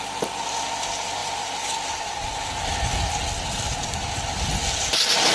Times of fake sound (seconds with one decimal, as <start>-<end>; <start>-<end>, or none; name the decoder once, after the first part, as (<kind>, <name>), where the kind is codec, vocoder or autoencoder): none